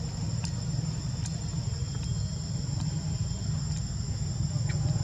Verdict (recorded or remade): recorded